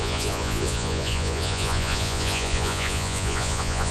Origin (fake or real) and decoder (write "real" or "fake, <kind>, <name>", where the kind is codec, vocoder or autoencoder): fake, vocoder, Vocos